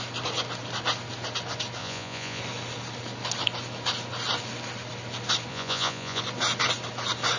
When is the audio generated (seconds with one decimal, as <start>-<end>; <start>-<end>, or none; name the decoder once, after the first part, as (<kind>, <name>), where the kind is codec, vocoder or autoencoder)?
1.8-2.4 (vocoder, Vocos); 5.5-6.2